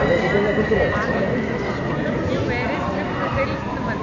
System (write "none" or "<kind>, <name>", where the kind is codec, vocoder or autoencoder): none